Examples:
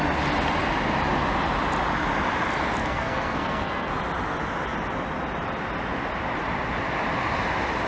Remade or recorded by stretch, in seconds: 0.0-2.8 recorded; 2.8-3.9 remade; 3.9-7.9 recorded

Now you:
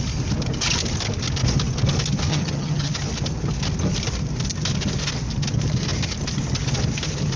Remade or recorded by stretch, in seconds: 0.0-2.3 recorded; 2.3-2.9 remade; 2.9-7.4 recorded

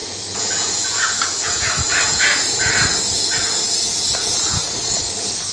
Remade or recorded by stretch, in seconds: 0.0-5.5 remade

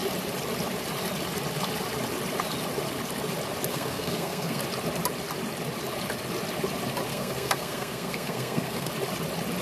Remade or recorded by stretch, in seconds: 0.0-3.7 recorded; 3.7-4.6 remade; 4.6-7.1 recorded; 7.1-8.9 remade; 8.9-9.6 recorded

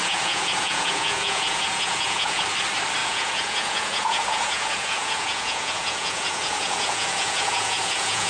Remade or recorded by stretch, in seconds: 0.0-2.4 remade; 2.4-3.0 recorded; 3.0-8.3 remade

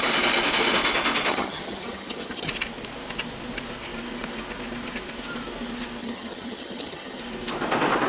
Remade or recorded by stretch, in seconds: 0.0-1.3 recorded; 1.3-2.5 remade; 2.5-6.0 recorded; 6.0-7.2 remade; 7.2-8.1 recorded

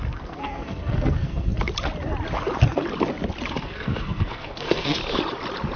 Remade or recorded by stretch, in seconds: 0.0-1.5 remade; 1.5-3.6 recorded; 3.6-5.0 remade; 5.0-5.8 recorded